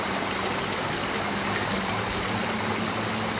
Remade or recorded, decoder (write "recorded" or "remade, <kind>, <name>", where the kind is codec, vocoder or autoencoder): recorded